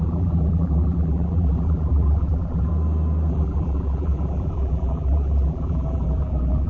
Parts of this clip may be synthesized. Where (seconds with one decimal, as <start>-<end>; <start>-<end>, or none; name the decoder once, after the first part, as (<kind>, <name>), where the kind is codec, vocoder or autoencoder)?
0.0-2.7 (vocoder, BigVGAN v2); 3.3-6.7